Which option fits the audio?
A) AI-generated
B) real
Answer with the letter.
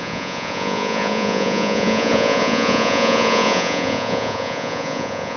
A